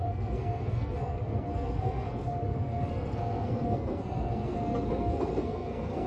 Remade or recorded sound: remade